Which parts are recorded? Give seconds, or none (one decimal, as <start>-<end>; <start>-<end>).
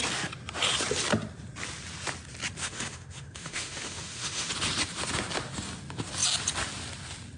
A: 0.0-2.6; 4.5-7.4